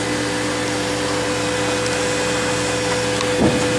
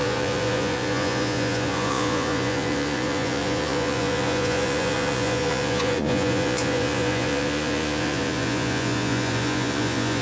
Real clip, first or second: first